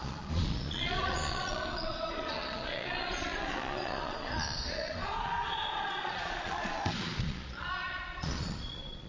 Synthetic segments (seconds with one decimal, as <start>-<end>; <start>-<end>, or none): 0.0-9.1